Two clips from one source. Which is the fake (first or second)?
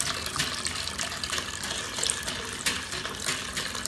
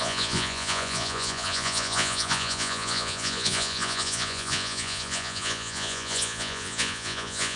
second